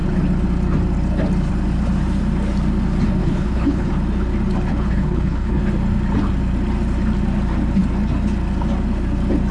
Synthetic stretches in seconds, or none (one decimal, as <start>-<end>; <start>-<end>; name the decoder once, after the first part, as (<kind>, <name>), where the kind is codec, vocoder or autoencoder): 3.2-3.9 (codec, HILCodec); 4.7-5.6